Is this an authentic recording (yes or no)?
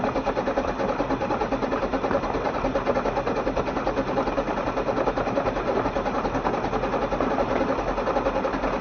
yes